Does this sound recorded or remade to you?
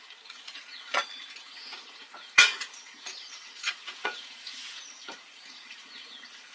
remade